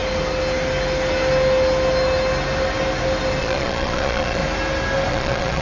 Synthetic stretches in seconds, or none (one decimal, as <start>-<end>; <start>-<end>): 3.4-4.4; 5.1-5.6

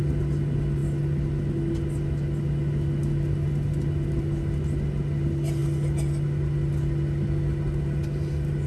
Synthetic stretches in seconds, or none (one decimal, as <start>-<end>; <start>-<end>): none

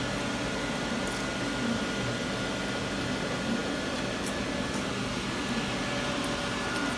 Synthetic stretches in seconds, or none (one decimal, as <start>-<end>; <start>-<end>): none

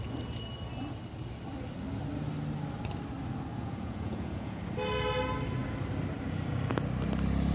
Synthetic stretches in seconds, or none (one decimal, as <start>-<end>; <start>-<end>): 3.5-4.6

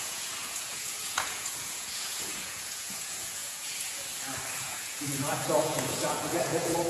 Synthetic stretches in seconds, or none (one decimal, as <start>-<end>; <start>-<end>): 0.0-4.1; 4.6-6.9